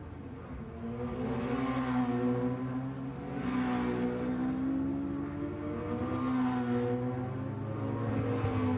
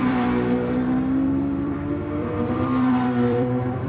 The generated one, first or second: second